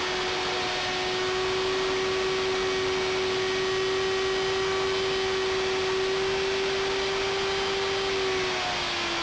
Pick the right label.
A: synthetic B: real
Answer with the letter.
B